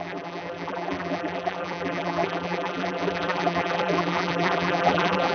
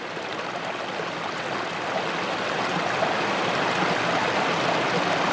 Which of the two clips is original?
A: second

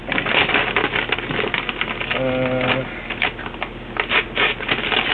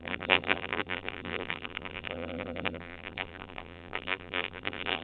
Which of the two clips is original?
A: first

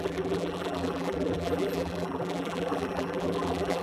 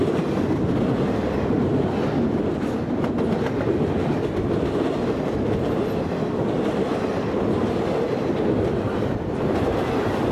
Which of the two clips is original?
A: second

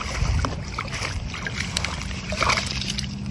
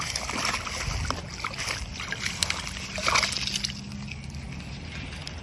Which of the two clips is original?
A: second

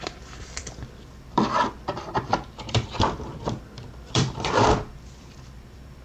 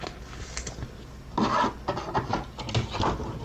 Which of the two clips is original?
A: second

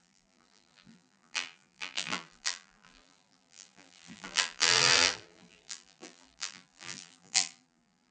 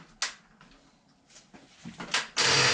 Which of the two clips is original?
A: second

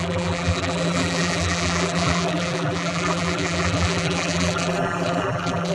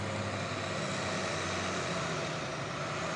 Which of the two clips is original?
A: second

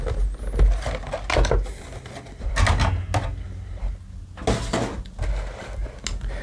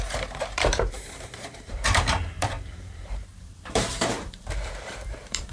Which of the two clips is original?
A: first